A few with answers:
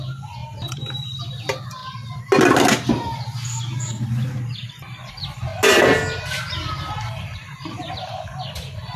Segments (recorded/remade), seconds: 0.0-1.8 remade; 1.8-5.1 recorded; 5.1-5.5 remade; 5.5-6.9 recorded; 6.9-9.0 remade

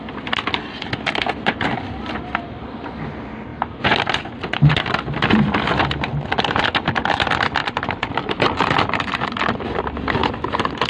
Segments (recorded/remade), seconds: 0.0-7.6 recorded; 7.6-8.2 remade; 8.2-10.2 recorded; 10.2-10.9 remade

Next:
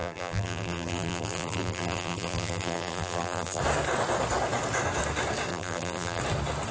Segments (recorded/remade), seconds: 0.0-3.6 remade; 3.6-5.5 recorded; 5.5-6.2 remade; 6.2-6.7 recorded

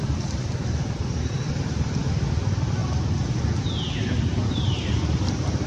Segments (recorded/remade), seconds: 0.0-2.8 remade; 2.8-3.9 recorded; 3.9-5.7 remade

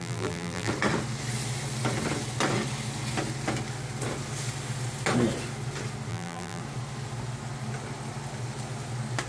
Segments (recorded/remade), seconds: 0.0-0.7 remade; 0.7-6.1 recorded; 6.1-6.6 remade; 6.6-9.3 recorded

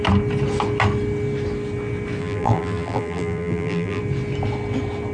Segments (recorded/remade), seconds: 0.0-2.2 recorded; 2.2-4.0 remade; 4.0-5.1 recorded

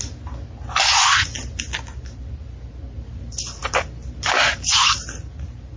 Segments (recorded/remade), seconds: 0.0-5.8 recorded

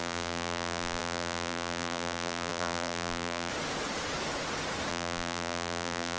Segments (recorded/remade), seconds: 0.0-3.5 remade; 3.5-4.9 recorded; 4.9-6.2 remade